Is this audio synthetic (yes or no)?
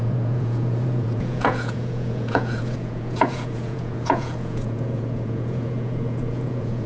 yes